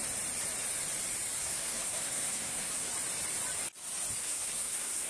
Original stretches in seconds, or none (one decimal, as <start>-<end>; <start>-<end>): 0.0-1.4; 2.9-4.2